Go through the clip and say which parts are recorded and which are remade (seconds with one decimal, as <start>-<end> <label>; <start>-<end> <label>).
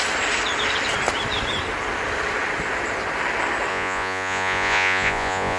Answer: 0.0-3.7 recorded; 3.7-5.6 remade